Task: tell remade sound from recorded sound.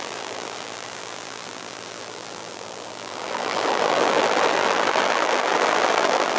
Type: remade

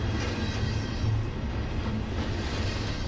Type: recorded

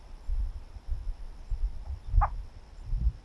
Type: recorded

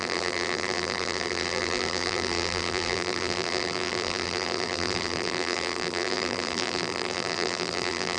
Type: remade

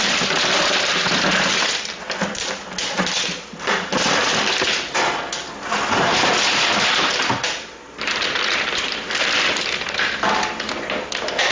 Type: remade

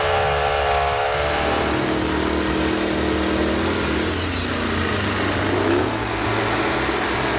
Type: recorded